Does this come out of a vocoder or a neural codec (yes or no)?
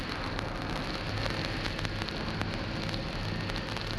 no